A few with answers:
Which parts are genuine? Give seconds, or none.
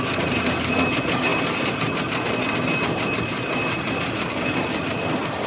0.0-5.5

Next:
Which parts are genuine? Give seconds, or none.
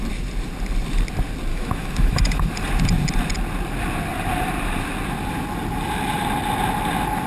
0.0-1.5; 2.5-7.3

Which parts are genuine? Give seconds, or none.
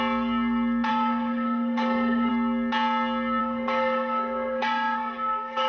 0.0-0.9; 2.3-3.4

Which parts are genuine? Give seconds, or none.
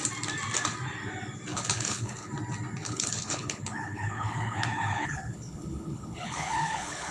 0.0-1.5; 2.3-2.8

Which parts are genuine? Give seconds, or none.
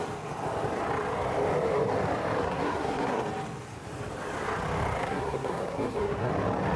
0.0-2.4; 3.2-5.0; 6.3-6.8